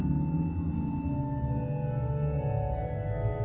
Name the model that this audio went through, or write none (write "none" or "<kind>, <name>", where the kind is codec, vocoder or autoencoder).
none